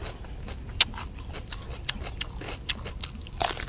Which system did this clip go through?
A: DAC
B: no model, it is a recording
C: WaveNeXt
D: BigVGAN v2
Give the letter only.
B